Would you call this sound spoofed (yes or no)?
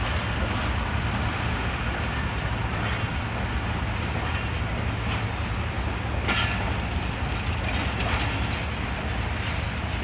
no